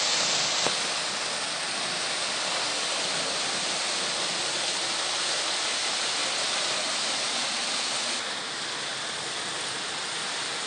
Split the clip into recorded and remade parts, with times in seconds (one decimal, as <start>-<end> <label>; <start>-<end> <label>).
0.0-10.7 recorded